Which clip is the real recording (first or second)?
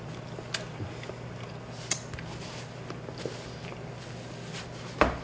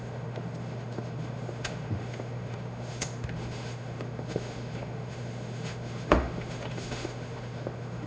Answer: first